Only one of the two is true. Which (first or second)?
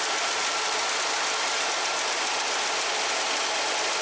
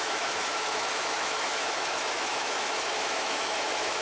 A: first